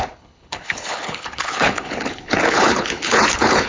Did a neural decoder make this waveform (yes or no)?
yes